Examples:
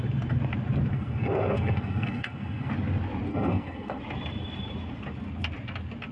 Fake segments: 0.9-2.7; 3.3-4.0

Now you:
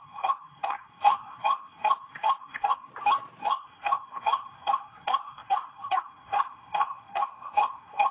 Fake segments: 0.0-2.9; 3.4-8.1

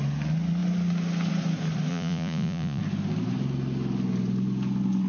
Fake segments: 1.9-2.8